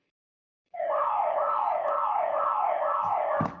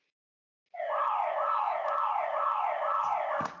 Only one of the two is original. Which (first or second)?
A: second